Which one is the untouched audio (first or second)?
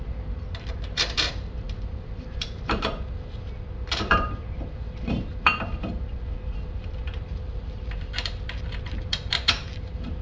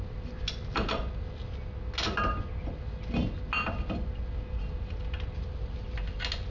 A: second